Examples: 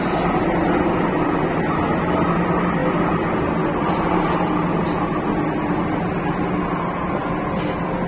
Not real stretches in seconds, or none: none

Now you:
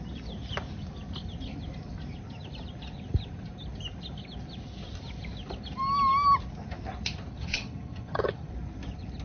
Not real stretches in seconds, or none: 7.3-8.5 (vocoder, HiFi-GAN)